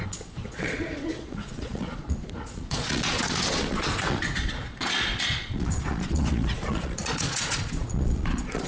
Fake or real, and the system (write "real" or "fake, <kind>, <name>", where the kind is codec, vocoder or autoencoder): fake, vocoder, Vocos